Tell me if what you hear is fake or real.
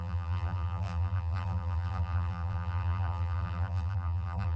fake